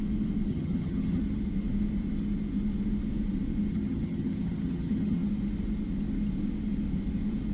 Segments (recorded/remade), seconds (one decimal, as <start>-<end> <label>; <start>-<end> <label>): 0.0-0.5 recorded; 0.5-1.2 remade; 1.2-3.7 recorded; 3.7-5.3 remade; 5.3-7.5 recorded